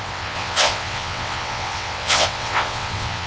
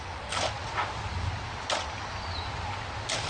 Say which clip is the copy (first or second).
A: first